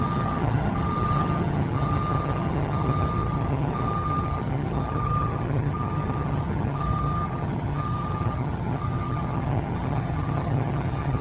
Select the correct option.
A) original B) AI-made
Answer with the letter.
B